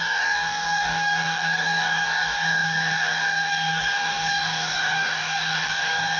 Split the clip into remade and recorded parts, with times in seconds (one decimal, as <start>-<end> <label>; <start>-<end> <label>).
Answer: 0.0-6.2 remade